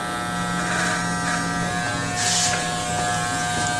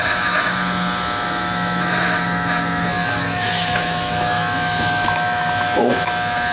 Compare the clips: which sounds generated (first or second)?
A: second